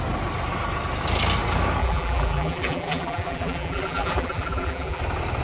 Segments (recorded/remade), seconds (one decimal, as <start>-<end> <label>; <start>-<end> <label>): 0.0-1.8 recorded; 1.8-5.0 remade; 5.0-5.4 recorded